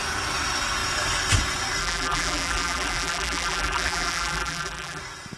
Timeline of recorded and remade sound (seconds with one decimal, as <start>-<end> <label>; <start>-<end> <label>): 0.0-1.8 recorded; 1.8-5.0 remade; 5.0-5.4 recorded